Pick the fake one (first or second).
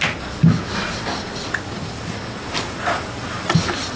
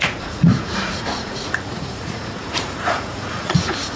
second